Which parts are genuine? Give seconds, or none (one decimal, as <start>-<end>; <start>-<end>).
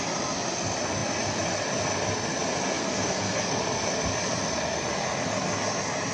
0.0-2.8; 3.6-6.1